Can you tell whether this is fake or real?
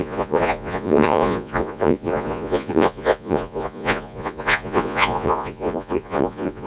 fake